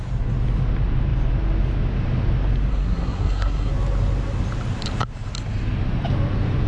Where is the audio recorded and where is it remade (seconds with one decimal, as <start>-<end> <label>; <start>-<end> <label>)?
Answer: 0.0-2.7 recorded; 2.7-3.7 remade; 3.7-6.7 recorded